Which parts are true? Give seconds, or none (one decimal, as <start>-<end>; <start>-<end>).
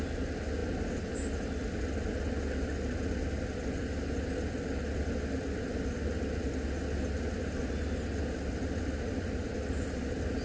0.0-10.4